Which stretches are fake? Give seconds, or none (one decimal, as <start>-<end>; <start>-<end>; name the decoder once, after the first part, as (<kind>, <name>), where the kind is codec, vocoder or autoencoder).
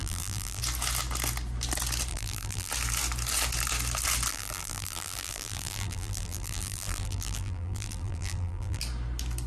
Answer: 0.0-0.6 (vocoder, BigVGAN v2); 2.1-2.7; 4.3-8.8